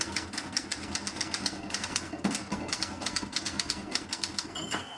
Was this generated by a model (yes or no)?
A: yes